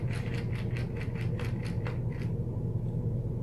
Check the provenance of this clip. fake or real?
real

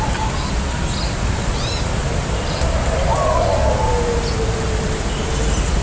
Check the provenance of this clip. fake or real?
real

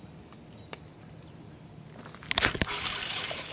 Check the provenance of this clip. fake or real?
real